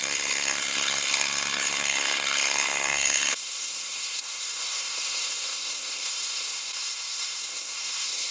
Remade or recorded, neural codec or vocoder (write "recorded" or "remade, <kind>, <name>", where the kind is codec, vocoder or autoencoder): remade, codec, SNAC